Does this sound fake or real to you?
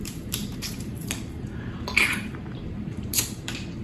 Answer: fake